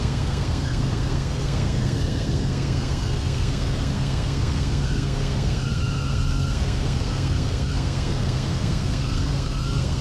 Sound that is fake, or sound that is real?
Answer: fake